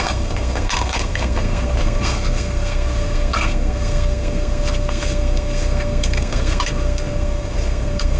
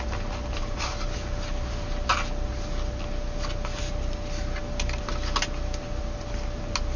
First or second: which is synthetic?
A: first